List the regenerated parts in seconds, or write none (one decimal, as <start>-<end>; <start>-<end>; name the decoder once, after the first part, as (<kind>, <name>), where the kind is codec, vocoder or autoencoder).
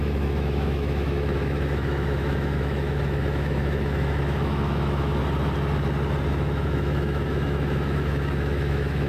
0.0-5.2 (autoencoder, DAC-VAE); 6.3-9.1